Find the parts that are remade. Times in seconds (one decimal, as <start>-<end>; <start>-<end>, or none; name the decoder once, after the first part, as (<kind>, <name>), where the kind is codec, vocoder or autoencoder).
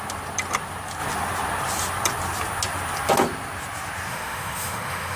4.1-5.2 (autoencoder, DAC-VAE)